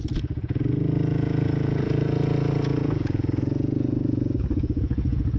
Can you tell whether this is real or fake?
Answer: fake